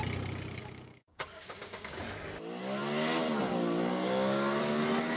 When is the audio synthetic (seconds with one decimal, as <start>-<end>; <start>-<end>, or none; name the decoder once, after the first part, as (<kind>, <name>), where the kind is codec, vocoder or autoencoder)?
0.6-2.0 (codec, DAC); 3.9-4.6